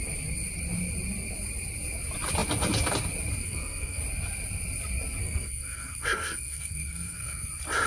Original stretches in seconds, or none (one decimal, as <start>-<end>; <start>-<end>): 0.0-3.4; 4.0-5.2; 7.5-7.9